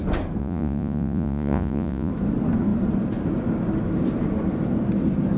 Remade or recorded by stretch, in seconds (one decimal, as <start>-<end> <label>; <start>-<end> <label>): 0.0-0.4 recorded; 0.4-2.1 remade; 2.1-5.4 recorded

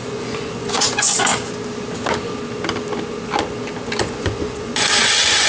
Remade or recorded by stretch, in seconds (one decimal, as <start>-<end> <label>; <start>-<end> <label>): 0.0-1.3 remade; 1.3-4.0 recorded; 4.0-5.5 remade

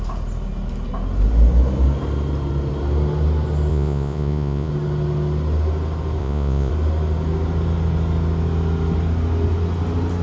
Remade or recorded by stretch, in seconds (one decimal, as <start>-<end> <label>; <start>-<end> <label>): 0.0-3.7 recorded; 3.7-4.7 remade; 4.7-6.2 recorded; 6.2-6.7 remade; 6.7-10.2 recorded